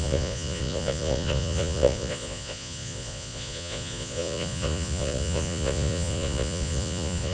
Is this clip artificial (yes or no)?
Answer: yes